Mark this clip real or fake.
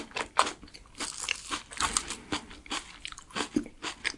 real